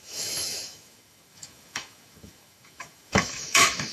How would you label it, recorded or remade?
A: remade